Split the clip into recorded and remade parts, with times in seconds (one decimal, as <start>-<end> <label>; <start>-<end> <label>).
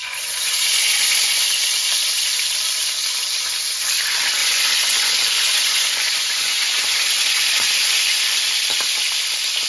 0.0-1.4 remade; 1.4-4.4 recorded; 4.4-8.2 remade; 8.2-9.7 recorded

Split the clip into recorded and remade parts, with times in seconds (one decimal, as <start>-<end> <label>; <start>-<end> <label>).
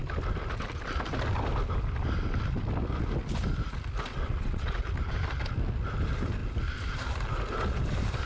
0.0-4.1 recorded; 4.1-4.8 remade; 4.8-8.3 recorded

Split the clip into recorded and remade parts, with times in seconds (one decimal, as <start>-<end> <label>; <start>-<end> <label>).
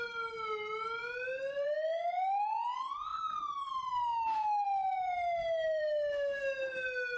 0.0-7.2 recorded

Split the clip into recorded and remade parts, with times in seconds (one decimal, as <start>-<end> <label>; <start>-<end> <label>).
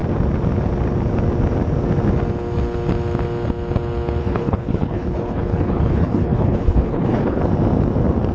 0.0-4.2 recorded; 4.2-7.4 remade; 7.4-8.3 recorded